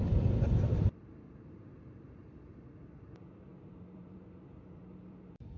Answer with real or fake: fake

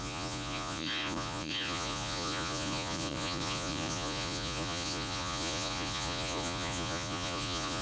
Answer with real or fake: fake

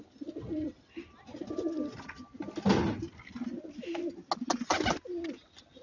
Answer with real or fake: real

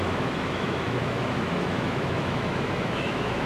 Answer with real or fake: fake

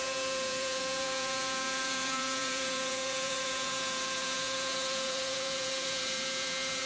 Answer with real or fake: fake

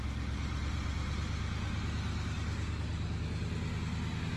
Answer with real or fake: real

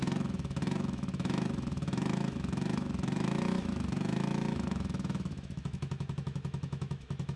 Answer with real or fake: fake